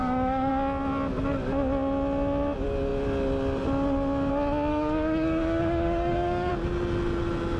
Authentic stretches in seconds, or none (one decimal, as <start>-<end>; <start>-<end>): 0.5-4.7; 6.5-7.6